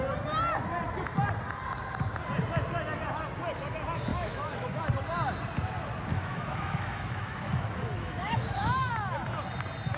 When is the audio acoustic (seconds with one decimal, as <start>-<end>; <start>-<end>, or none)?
0.0-4.1; 4.8-6.1; 8.9-10.0